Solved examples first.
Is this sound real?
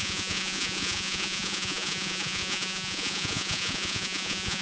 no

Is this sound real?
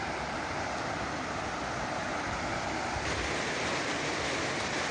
yes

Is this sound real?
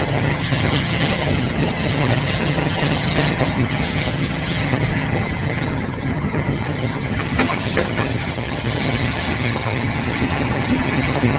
no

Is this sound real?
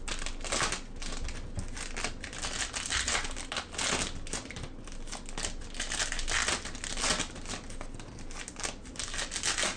yes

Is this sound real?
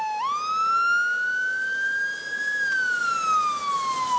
yes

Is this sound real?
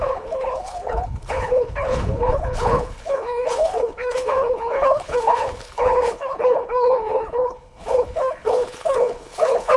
no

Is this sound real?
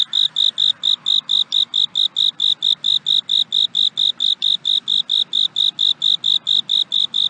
yes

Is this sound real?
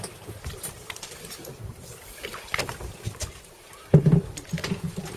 yes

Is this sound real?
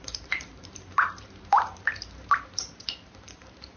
no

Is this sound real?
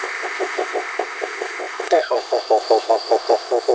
no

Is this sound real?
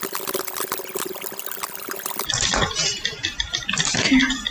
yes